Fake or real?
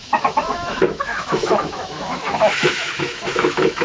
fake